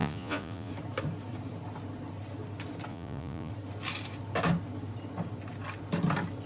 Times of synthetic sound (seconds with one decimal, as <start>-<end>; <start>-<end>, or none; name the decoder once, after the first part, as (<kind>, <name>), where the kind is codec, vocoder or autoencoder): 0.0-0.7 (vocoder, Vocos); 2.9-3.5